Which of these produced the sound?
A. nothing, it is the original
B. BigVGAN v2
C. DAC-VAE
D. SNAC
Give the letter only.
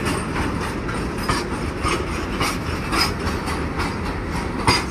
A